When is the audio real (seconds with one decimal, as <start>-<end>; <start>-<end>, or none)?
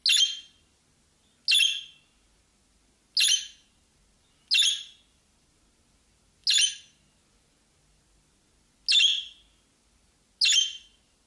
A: 0.0-11.3